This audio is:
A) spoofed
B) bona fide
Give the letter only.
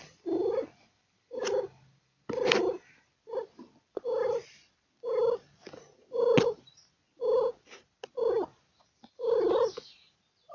B